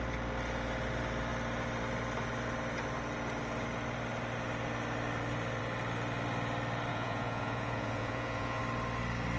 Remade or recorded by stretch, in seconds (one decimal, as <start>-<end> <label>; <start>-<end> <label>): 0.0-6.9 recorded; 6.9-8.6 remade; 8.6-9.4 recorded